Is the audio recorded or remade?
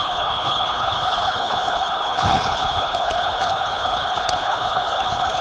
remade